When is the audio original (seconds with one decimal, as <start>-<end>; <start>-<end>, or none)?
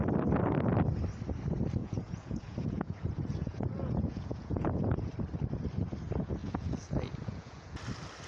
0.0-1.8; 5.1-6.4; 7.8-8.3